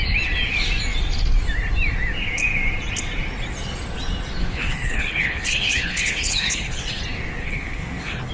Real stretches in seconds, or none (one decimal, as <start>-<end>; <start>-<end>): 0.0-4.4; 7.0-7.4

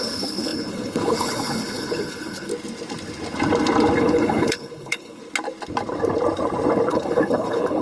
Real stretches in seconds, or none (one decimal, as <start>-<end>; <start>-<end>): 2.5-4.0; 5.2-6.9

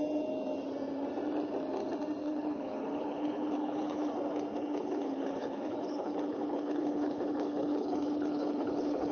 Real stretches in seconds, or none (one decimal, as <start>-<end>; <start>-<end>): 0.0-2.2; 4.1-4.5

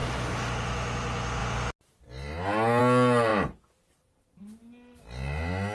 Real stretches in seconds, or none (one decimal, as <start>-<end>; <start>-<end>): 0.0-5.7

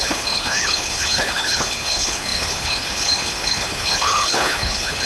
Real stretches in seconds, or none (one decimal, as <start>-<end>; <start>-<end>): none

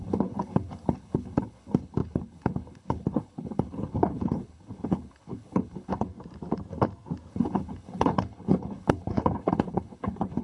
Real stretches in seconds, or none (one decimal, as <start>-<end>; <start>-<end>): 6.1-7.3

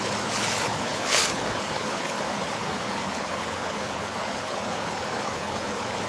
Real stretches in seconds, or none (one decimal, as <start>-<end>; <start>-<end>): none

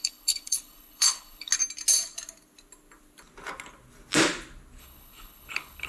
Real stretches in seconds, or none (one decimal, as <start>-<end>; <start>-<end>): 1.5-4.8